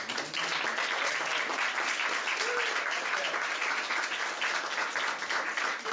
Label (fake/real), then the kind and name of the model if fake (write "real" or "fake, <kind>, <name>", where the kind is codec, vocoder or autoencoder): real